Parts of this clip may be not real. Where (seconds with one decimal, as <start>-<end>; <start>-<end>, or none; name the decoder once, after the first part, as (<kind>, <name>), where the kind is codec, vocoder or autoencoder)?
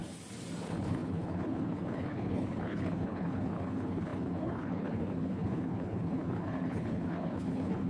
0.6-7.9 (codec, HILCodec)